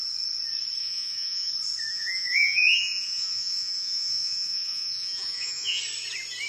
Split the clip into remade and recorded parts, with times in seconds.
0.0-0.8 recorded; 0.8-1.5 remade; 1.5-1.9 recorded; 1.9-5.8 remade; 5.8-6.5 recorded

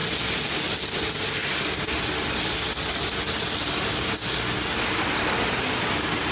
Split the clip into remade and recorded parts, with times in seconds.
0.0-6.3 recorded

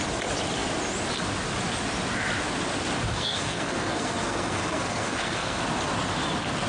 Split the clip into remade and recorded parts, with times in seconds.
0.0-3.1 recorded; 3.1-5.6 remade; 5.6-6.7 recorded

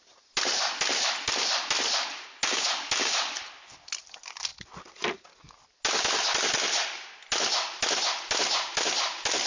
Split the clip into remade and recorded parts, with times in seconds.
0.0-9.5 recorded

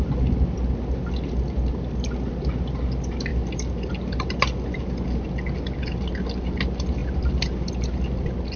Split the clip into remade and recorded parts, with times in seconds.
0.0-8.6 recorded

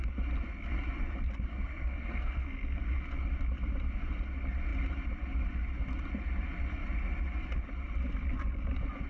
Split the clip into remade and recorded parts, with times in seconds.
0.0-1.5 recorded; 1.5-2.8 remade; 2.8-9.1 recorded

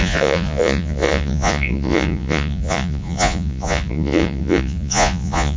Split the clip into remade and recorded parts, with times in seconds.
0.0-5.6 remade

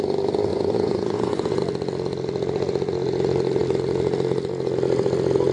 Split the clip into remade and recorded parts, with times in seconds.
0.0-0.5 recorded; 0.5-1.6 remade; 1.6-5.5 recorded